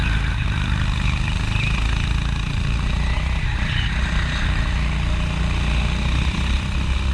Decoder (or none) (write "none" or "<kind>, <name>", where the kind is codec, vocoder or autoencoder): none